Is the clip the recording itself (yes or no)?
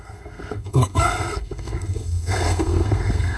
no